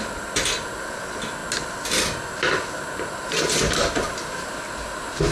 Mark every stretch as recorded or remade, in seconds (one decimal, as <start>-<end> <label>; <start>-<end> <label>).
0.0-5.3 recorded